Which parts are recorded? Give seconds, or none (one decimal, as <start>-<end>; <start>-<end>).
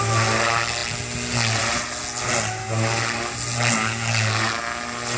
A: 0.0-5.2